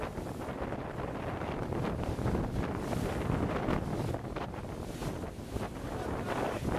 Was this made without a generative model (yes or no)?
no